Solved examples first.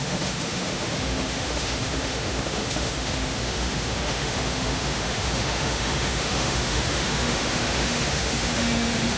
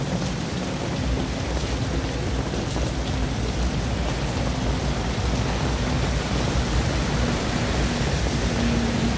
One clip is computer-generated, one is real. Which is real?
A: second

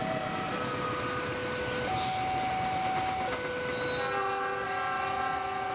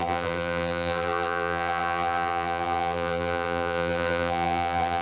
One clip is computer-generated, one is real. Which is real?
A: first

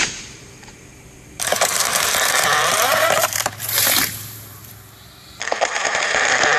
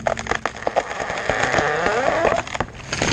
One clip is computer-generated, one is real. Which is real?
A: second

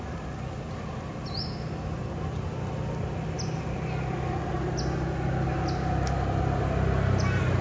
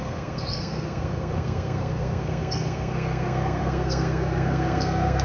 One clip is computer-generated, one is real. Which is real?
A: first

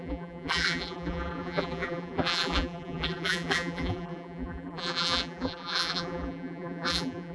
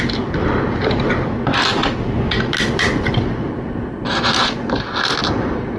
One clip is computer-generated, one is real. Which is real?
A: second